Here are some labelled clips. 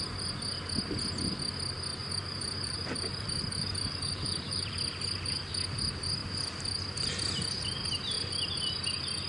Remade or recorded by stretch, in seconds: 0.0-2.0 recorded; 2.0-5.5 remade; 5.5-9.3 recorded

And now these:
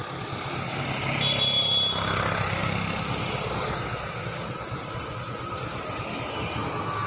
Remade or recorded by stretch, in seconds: 0.0-2.6 remade; 2.6-7.1 recorded